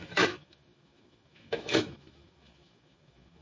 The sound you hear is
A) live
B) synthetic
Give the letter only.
B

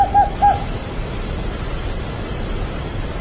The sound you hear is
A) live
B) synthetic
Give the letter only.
A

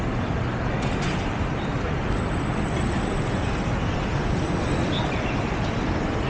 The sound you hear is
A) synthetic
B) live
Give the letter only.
B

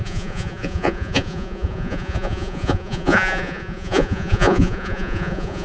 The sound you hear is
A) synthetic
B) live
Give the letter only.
A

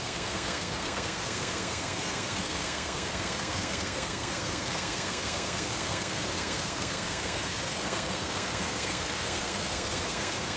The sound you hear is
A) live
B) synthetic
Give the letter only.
B